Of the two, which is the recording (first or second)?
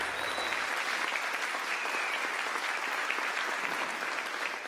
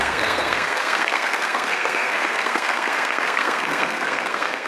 first